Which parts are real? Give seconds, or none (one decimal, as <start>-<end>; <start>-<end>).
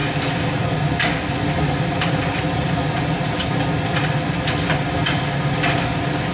0.0-6.3